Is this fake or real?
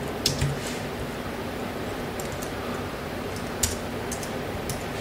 real